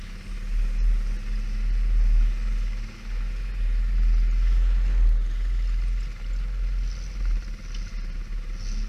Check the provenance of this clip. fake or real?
real